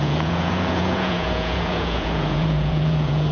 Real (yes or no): no